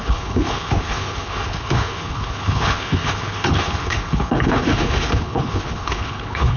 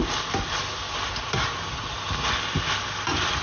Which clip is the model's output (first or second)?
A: first